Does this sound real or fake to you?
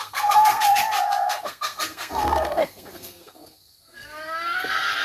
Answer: fake